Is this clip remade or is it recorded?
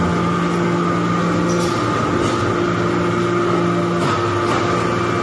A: recorded